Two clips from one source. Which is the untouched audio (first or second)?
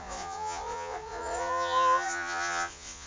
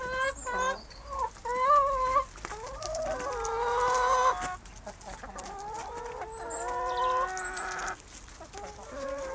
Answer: second